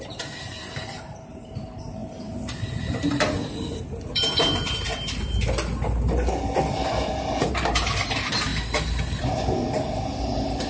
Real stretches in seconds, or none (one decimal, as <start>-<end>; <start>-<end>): 2.0-3.1; 4.9-7.1; 8.5-10.7